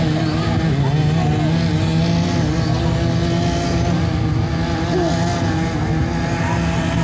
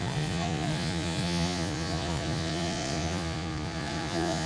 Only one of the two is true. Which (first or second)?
first